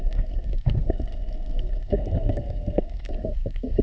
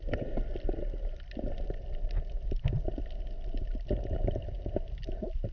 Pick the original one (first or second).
second